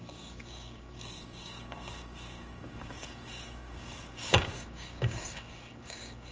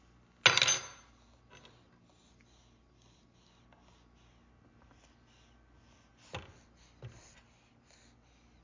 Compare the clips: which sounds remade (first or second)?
first